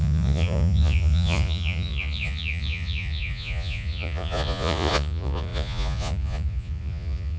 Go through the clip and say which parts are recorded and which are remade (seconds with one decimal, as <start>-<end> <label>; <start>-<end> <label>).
0.0-7.4 remade